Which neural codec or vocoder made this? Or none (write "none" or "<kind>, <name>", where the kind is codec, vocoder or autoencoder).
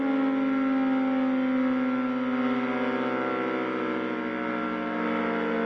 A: none